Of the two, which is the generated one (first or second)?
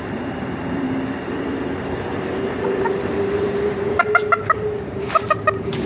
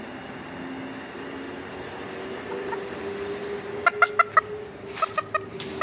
first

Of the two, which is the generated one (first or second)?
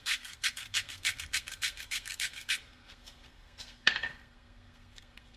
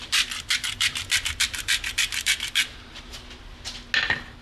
first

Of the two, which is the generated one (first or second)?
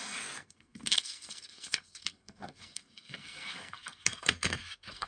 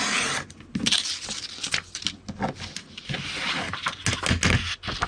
first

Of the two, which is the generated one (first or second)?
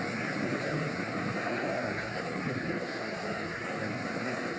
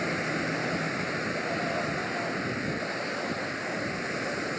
first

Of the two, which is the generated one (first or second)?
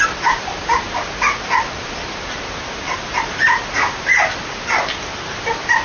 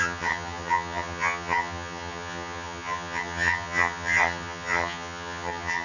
second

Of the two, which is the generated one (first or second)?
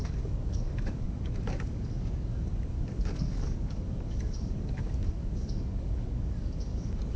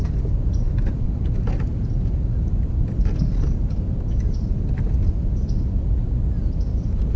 first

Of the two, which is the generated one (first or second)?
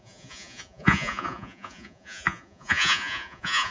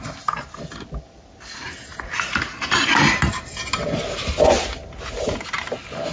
first